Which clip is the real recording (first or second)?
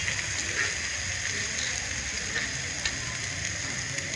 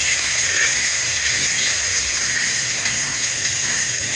first